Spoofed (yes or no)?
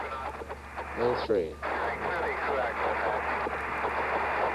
no